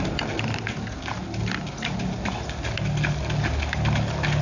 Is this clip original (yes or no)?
yes